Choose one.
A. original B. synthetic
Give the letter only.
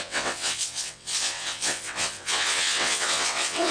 B